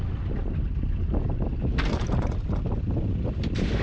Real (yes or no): yes